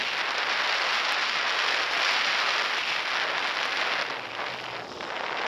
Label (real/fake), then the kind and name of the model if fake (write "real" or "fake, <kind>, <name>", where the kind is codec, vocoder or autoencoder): real